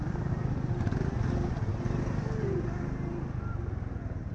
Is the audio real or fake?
real